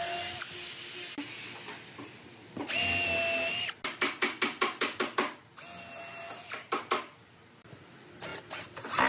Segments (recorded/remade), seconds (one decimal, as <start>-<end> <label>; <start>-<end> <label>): 0.0-9.1 recorded